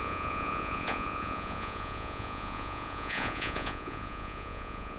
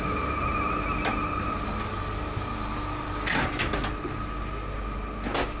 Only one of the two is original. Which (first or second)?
second